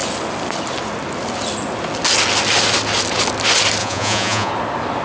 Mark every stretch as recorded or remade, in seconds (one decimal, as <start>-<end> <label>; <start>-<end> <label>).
0.0-3.8 recorded; 3.8-4.5 remade; 4.5-5.0 recorded